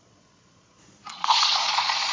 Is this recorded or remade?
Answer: remade